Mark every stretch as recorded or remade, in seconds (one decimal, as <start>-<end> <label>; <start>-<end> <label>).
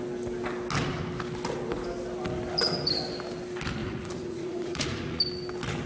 0.0-3.8 recorded; 3.8-5.2 remade; 5.2-5.9 recorded